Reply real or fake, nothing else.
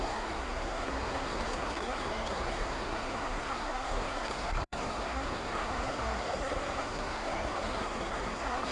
fake